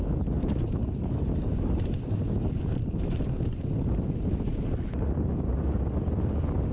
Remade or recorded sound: recorded